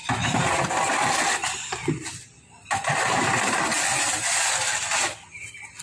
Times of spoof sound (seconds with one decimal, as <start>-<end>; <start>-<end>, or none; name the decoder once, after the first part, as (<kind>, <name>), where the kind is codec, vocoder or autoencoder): none